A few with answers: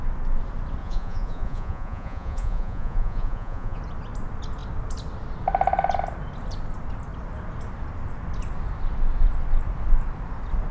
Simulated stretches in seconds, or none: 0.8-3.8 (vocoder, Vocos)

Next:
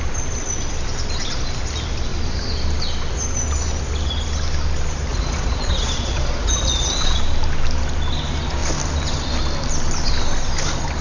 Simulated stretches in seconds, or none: 5.1-7.2 (vocoder, Vocos)

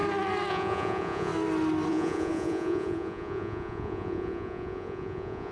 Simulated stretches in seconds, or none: 0.5-1.3 (vocoder, Vocos); 1.9-5.5

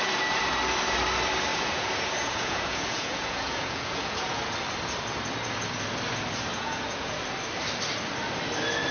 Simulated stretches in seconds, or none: 1.5-4.4 (vocoder, Vocos); 6.5-7.2

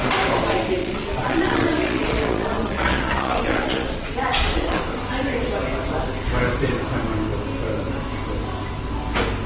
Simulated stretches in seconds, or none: 0.8-4.8 (vocoder, Vocos)